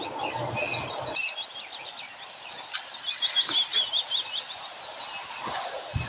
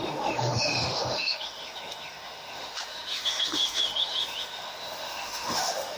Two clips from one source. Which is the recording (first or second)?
first